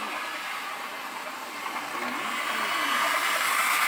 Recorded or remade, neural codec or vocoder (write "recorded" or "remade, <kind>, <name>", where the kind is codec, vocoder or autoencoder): recorded